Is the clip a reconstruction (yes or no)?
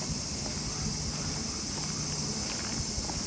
no